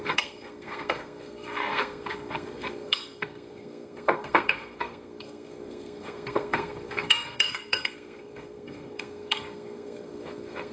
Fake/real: fake